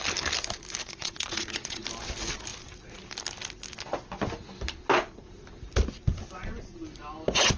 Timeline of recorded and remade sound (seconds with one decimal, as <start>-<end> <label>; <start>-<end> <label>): 0.0-0.8 recorded; 0.8-1.8 remade; 1.8-7.6 recorded

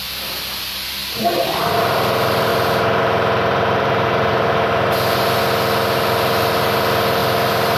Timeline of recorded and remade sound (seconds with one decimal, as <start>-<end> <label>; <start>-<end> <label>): 0.0-2.5 recorded; 2.5-5.4 remade; 5.4-7.8 recorded

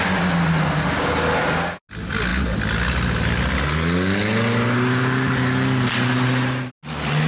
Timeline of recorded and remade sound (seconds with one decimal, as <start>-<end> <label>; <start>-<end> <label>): 0.0-7.3 recorded

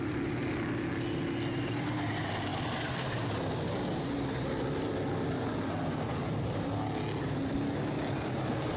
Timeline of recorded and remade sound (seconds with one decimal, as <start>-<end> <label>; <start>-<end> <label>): 0.0-8.8 recorded

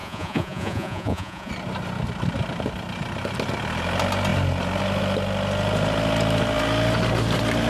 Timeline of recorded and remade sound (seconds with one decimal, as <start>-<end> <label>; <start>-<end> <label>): 0.0-1.5 remade; 1.5-7.7 recorded

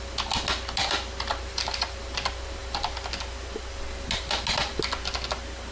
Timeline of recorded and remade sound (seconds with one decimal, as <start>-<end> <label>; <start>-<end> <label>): 0.0-5.7 recorded

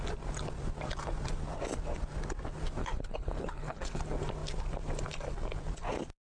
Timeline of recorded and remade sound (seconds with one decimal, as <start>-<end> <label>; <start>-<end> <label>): 0.0-2.8 recorded; 2.8-4.0 remade; 4.0-6.2 recorded

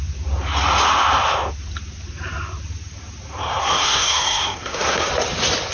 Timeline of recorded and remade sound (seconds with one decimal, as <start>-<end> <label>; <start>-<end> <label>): 0.0-3.6 recorded; 3.6-5.1 remade; 5.1-5.7 recorded